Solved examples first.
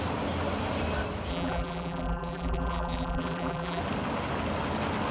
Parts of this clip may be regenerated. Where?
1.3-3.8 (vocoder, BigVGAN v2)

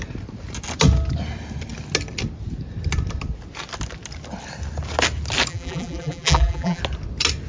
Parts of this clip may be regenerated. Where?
5.5-6.8 (vocoder, BigVGAN v2)

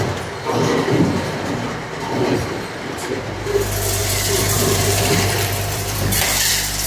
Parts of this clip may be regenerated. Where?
4.0-6.5 (vocoder, BigVGAN v2)

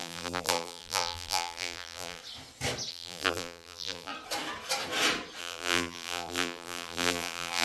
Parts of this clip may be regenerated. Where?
0.0-2.2 (vocoder, BigVGAN v2); 2.9-4.1; 5.4-7.6

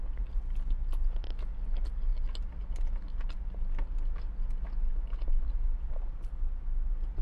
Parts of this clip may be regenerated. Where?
none

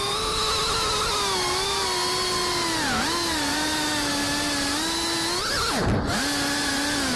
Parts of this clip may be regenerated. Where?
none